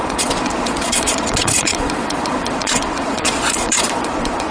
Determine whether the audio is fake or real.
fake